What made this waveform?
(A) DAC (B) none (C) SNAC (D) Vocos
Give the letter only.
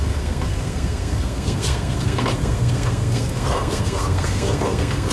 C